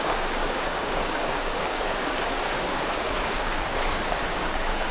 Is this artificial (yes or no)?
yes